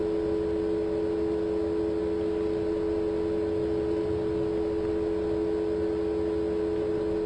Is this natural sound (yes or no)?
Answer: yes